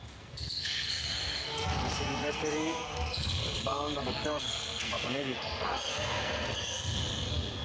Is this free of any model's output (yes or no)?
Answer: no